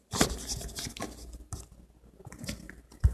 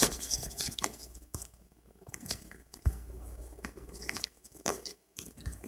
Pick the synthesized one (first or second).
second